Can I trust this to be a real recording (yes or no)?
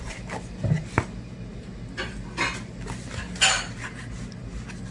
yes